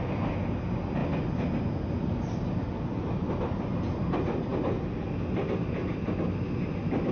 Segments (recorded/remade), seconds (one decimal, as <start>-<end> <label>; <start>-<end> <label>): 0.0-7.1 recorded